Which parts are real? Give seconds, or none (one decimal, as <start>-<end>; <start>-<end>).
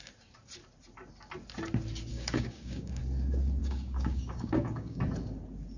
0.0-2.1; 3.0-3.6; 5.0-5.8